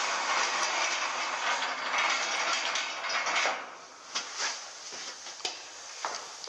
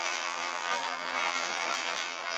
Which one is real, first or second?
first